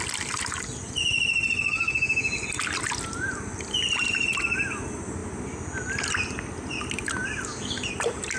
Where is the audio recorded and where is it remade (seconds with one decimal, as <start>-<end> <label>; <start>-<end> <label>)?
0.0-8.4 recorded

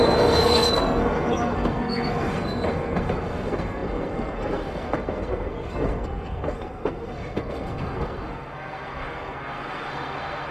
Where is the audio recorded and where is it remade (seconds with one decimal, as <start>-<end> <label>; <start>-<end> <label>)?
0.0-10.5 remade

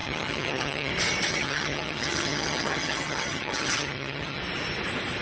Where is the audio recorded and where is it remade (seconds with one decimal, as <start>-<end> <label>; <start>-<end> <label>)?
0.0-0.9 remade; 0.9-1.3 recorded; 1.3-4.4 remade; 4.4-5.2 recorded